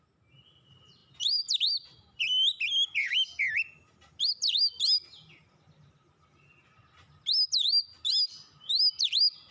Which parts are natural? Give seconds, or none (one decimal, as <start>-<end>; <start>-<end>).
0.0-9.5